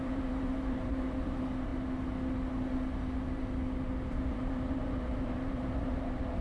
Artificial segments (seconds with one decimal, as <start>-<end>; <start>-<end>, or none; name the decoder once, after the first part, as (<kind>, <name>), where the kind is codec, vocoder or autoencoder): 0.0-1.7 (vocoder, BigVGAN v2); 4.1-6.4